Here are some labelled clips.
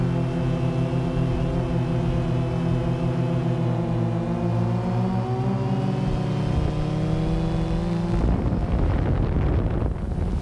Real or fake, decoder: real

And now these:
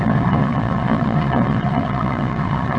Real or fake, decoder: fake, vocoder, Vocos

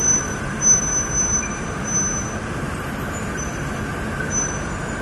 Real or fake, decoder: real